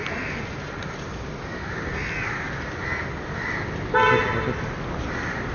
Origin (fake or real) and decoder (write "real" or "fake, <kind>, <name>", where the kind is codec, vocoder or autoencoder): real